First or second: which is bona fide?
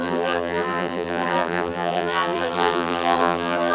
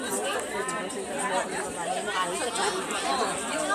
second